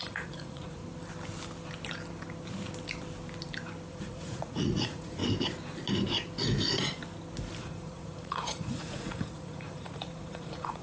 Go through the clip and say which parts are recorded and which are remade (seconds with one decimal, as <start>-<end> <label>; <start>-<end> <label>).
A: 0.0-0.8 remade; 0.8-3.9 recorded; 3.9-5.2 remade; 5.2-7.6 recorded; 7.6-10.8 remade